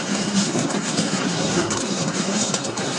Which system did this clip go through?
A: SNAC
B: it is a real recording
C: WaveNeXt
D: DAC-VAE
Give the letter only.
A